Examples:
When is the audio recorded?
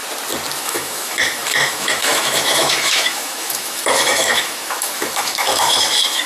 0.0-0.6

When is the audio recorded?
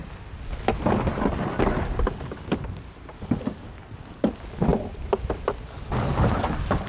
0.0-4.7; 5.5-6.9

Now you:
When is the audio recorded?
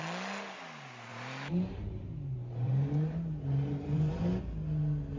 0.0-1.1; 4.2-5.2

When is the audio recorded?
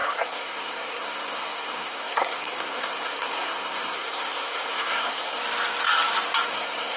5.4-6.5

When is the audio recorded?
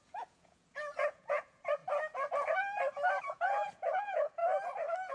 1.8-3.2; 4.4-5.1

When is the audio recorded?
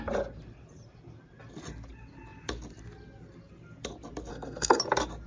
0.0-4.3; 4.8-5.3